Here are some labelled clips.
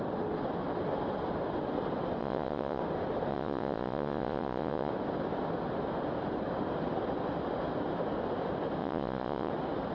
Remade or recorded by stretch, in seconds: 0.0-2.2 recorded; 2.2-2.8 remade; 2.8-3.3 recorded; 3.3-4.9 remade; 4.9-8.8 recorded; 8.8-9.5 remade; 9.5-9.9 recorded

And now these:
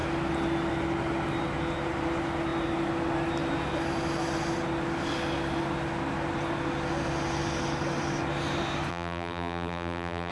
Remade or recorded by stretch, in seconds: 0.0-8.9 recorded; 8.9-10.3 remade